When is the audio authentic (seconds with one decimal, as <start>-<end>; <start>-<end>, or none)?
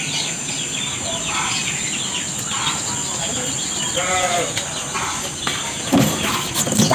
0.0-6.9